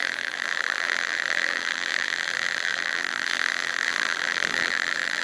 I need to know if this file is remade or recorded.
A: remade